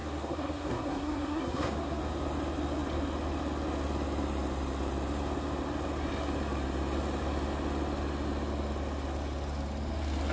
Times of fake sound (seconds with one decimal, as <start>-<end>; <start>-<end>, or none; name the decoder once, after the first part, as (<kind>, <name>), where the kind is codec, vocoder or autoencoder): 0.0-2.0 (codec, SNAC)